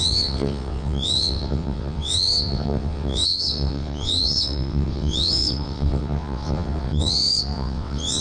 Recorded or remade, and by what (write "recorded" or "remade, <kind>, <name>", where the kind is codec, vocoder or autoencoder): remade, vocoder, WaveNeXt